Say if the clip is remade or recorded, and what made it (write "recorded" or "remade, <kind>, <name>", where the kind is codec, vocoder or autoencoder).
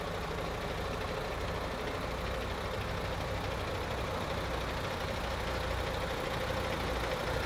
recorded